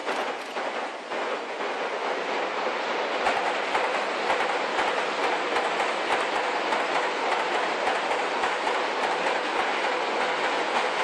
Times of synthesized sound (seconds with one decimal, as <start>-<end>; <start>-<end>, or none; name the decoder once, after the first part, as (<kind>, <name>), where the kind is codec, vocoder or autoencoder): 0.0-2.1 (vocoder, Vocos); 9.7-11.0